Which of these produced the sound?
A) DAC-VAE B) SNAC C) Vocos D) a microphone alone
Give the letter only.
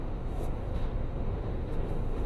A